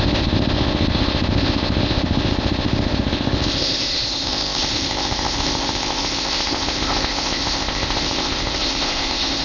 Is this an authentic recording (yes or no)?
no